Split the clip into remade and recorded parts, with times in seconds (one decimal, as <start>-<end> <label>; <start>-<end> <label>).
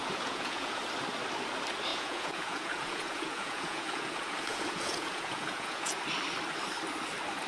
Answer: 0.0-0.8 remade; 0.8-1.9 recorded; 1.9-6.0 remade; 6.0-7.5 recorded